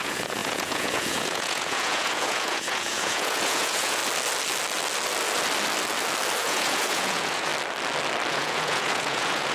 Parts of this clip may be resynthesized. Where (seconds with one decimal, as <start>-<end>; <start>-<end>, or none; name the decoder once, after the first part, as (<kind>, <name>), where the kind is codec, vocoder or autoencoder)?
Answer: 0.0-4.0 (vocoder, Vocos); 6.4-7.5; 8.3-9.5